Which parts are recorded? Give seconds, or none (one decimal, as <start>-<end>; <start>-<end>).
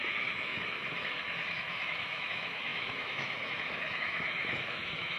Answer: none